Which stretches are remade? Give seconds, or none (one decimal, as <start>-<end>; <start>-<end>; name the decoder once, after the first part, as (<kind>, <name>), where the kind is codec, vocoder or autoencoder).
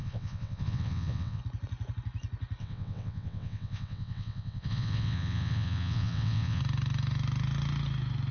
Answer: 0.0-1.4 (vocoder, WaveNeXt); 2.6-6.6